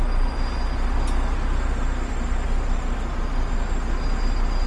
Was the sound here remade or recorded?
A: recorded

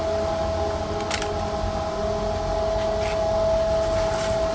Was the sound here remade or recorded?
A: recorded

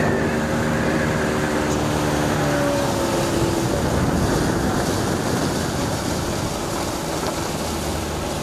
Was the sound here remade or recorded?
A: recorded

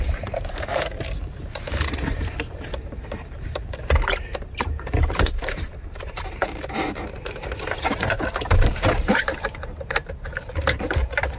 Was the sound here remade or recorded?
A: remade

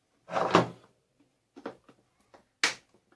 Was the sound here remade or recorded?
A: recorded